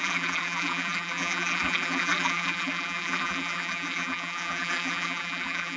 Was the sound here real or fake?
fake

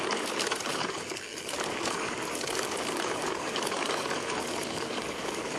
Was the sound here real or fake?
fake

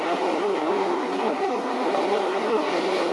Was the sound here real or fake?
fake